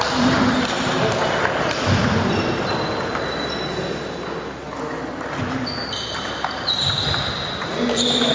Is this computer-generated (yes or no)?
no